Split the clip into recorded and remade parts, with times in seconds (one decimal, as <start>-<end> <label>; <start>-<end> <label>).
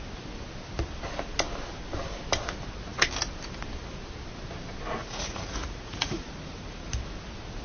0.0-5.0 recorded; 5.0-6.8 remade; 6.8-7.6 recorded